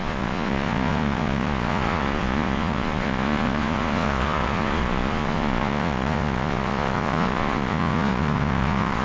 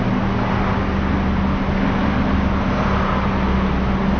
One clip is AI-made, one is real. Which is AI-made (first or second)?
first